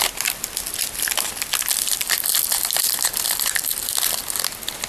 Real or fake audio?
real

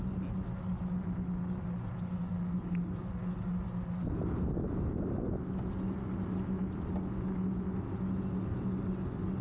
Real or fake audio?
real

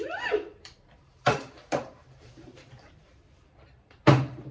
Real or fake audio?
fake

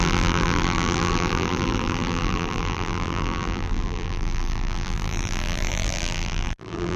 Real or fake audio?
fake